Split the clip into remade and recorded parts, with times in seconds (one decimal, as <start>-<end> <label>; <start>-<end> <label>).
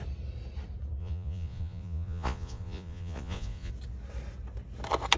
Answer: 0.0-1.0 recorded; 1.0-3.7 remade; 3.7-5.2 recorded